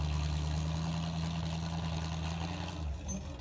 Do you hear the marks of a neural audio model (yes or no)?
no